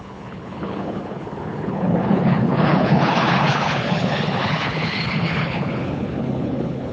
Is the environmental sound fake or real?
fake